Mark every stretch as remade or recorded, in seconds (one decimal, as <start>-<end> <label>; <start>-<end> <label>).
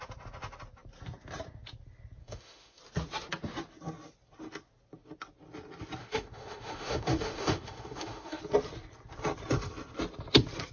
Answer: 0.0-2.2 recorded; 2.2-2.8 remade; 2.8-6.0 recorded; 6.0-8.4 remade; 8.4-10.7 recorded